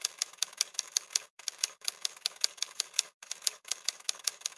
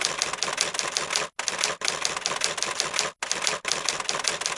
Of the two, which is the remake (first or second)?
first